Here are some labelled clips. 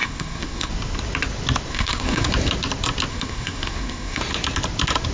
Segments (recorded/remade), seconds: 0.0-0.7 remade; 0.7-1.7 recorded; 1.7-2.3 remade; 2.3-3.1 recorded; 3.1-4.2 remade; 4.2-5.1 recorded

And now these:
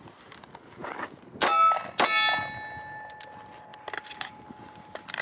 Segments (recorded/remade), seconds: 0.0-5.2 recorded